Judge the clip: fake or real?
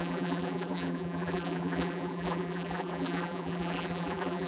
fake